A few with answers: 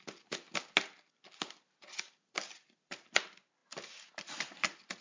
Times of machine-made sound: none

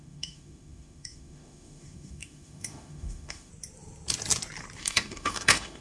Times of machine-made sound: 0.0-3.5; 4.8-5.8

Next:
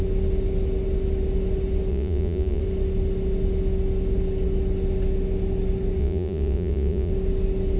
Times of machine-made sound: 1.9-2.6; 6.0-7.1

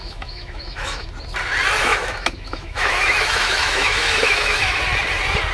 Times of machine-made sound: 0.0-1.1; 1.8-4.8

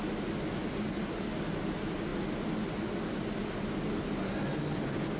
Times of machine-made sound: none